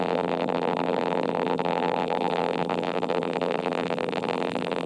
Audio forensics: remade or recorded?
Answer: remade